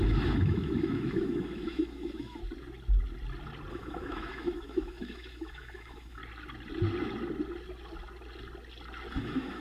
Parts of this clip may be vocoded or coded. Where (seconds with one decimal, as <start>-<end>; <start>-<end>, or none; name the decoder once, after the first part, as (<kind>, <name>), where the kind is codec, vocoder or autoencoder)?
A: 0.0-2.4 (autoencoder, DAC-VAE); 3.7-6.2; 9.1-9.6

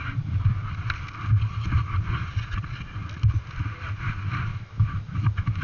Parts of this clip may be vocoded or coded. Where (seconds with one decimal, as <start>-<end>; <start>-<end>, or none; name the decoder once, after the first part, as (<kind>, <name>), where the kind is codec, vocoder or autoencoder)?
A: 4.5-5.6 (autoencoder, DAC-VAE)

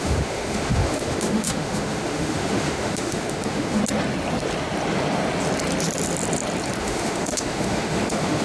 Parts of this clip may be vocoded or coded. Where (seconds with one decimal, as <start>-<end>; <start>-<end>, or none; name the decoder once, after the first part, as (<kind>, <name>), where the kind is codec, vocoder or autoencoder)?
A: 0.0-3.8 (autoencoder, DAC-VAE); 6.8-8.4

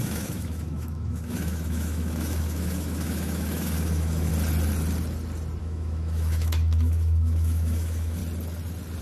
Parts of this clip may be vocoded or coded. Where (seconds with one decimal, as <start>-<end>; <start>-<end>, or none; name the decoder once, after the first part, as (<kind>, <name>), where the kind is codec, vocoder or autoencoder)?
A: 0.0-4.3 (autoencoder, DAC-VAE); 5.6-8.2

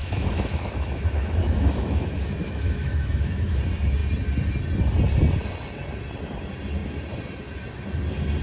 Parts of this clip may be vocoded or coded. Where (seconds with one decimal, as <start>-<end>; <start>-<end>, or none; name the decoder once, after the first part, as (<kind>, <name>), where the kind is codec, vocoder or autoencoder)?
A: 0.0-3.6 (autoencoder, DAC-VAE)

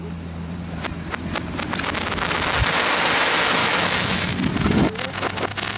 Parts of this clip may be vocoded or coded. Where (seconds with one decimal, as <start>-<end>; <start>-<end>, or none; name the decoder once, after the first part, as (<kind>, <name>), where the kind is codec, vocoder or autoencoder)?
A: 3.6-4.3 (autoencoder, DAC-VAE)

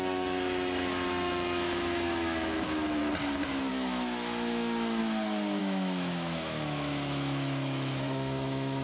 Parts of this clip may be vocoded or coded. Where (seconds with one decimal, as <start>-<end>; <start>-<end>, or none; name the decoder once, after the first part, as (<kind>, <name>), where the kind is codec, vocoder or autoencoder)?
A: 0.0-3.0 (autoencoder, DAC-VAE); 3.7-5.0; 5.6-8.8

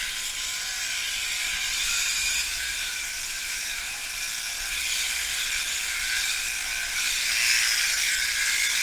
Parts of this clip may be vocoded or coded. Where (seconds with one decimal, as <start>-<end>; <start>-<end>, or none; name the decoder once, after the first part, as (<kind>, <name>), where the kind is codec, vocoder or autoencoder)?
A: 1.8-3.8 (autoencoder, DAC-VAE)